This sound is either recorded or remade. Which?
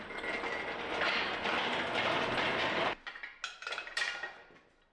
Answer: recorded